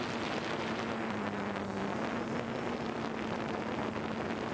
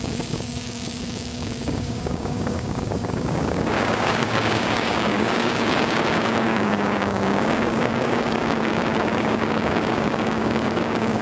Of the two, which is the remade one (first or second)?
second